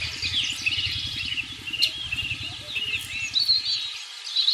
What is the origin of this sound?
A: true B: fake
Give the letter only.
A